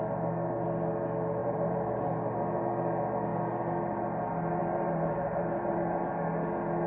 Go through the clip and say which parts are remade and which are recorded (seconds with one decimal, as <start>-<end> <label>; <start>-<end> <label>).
0.0-1.4 recorded; 1.4-2.6 remade; 2.6-4.6 recorded; 4.6-6.1 remade; 6.1-6.9 recorded